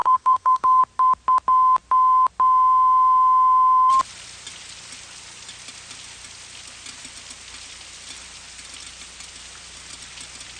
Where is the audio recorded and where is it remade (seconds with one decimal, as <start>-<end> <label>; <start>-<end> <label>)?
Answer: 0.0-0.8 remade; 0.8-10.6 recorded

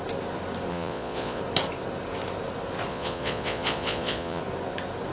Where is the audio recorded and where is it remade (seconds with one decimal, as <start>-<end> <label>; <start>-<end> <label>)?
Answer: 0.0-0.7 recorded; 0.7-1.4 remade; 1.4-2.9 recorded; 2.9-4.4 remade; 4.4-5.1 recorded